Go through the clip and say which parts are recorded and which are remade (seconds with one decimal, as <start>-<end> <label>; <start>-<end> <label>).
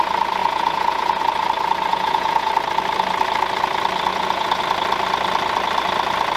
0.0-0.4 recorded; 0.4-1.2 remade; 1.2-1.9 recorded; 1.9-2.5 remade; 2.5-4.1 recorded; 4.1-4.6 remade; 4.6-6.4 recorded